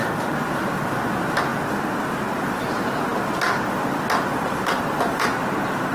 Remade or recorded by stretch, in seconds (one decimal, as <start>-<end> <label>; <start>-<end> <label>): 0.0-5.9 recorded